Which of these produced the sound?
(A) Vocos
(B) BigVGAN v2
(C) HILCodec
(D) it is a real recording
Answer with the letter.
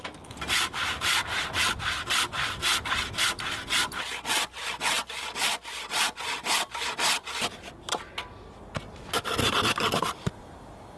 D